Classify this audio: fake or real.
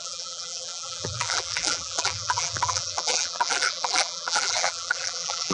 fake